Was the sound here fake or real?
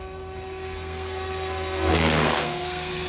fake